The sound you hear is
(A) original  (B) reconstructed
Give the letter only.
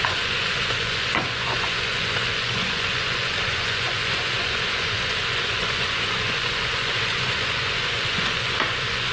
B